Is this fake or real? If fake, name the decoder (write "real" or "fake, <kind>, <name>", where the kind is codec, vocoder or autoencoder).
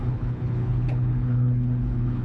fake, codec, HILCodec